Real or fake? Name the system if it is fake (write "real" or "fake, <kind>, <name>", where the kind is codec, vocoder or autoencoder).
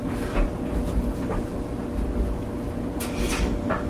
real